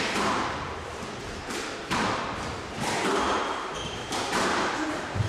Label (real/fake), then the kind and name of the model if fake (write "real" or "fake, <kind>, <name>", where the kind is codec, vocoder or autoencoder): fake, vocoder, BigVGAN v2